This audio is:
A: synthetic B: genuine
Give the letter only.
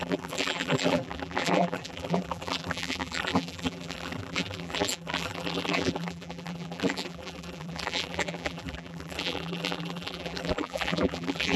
A